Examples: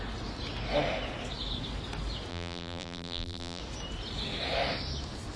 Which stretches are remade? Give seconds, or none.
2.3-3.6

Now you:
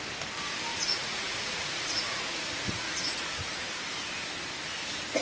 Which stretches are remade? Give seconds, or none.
0.7-3.6

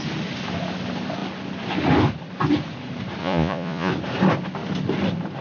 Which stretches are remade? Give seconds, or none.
3.2-3.9

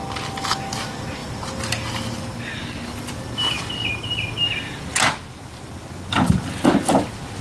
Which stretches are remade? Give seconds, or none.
none